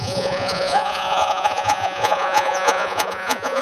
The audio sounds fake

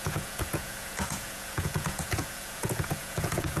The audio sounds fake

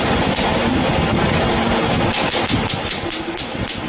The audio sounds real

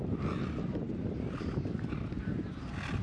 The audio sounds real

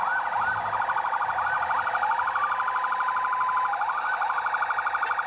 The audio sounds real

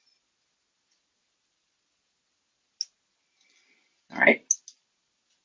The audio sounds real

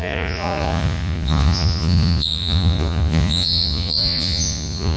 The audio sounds fake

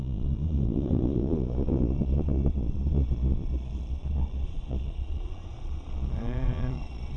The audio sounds fake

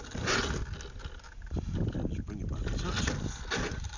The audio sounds real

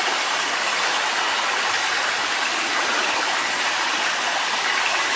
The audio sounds real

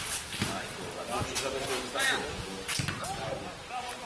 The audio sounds real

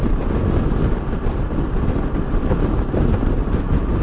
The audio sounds real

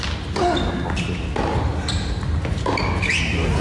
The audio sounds real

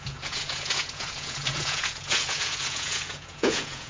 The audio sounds fake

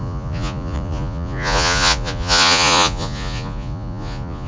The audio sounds fake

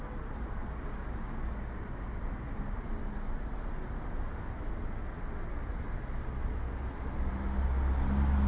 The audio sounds real